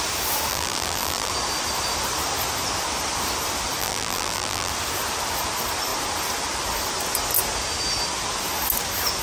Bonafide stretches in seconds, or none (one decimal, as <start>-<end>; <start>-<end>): 0.0-0.5; 1.3-3.8; 4.7-9.2